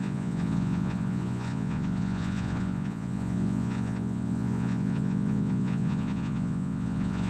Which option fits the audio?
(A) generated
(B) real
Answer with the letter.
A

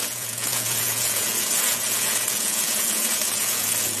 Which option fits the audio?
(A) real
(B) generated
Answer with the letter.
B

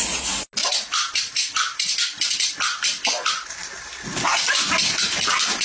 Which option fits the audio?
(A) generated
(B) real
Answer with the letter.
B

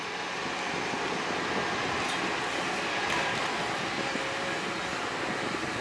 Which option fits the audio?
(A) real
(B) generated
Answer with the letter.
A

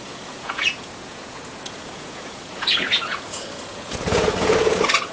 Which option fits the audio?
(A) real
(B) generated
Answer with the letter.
B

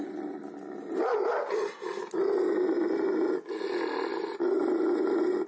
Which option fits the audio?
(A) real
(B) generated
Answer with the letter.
A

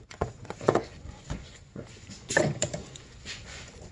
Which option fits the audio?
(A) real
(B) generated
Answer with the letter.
B